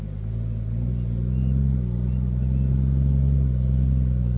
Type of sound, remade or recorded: recorded